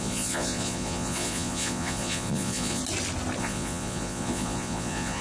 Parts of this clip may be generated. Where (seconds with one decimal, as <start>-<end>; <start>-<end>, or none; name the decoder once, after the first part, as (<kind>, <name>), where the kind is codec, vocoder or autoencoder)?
0.0-2.8 (vocoder, Vocos); 3.4-5.2